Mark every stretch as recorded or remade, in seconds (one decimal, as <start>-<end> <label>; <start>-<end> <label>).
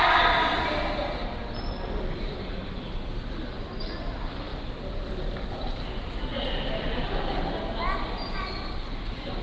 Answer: 0.0-9.4 recorded